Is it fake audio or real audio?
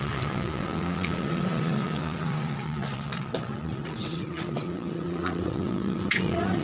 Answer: fake